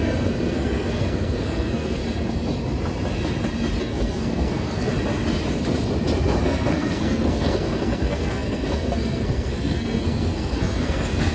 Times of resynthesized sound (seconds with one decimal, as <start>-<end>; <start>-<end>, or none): 0.0-2.0; 3.8-4.9; 6.4-11.3